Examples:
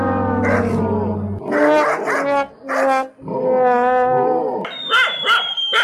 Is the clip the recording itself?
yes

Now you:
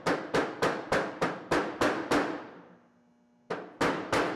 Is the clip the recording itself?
yes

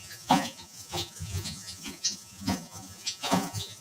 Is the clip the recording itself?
no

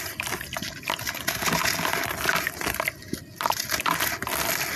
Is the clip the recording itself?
yes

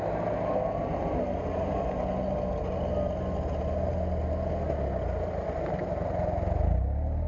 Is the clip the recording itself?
yes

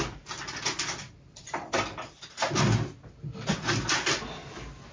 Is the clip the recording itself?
yes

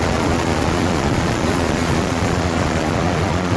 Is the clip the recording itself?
no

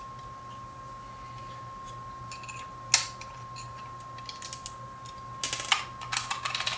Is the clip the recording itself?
yes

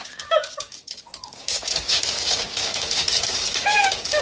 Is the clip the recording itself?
no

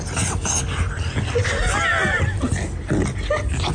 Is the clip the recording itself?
yes